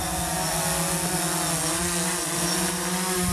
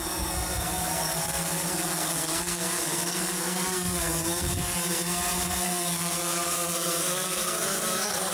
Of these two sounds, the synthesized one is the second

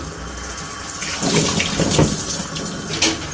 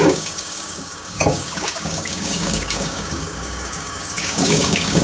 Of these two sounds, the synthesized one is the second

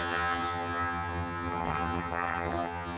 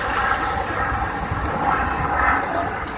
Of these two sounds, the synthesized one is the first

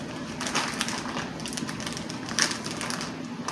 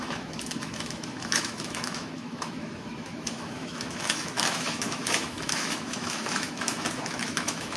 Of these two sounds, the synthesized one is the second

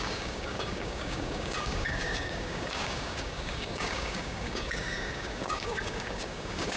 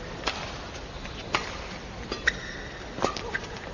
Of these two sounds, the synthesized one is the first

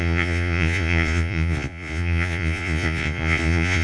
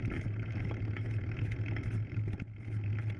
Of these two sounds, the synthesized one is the first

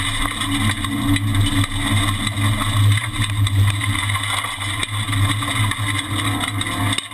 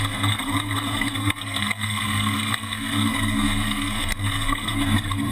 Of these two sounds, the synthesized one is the second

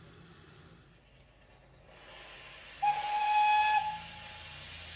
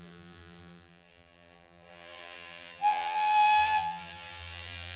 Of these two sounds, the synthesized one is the second